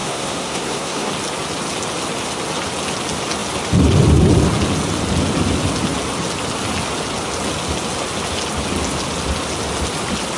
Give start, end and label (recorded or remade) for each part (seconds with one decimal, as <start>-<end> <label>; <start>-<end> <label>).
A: 0.0-1.1 remade; 1.1-10.4 recorded